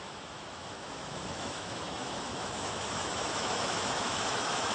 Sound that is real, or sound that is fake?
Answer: fake